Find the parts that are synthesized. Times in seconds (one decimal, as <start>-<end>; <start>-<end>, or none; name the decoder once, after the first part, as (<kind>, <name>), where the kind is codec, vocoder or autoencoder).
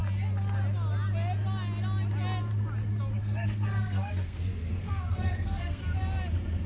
3.2-5.8 (codec, SNAC)